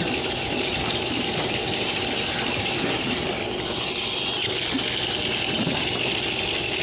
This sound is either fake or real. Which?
real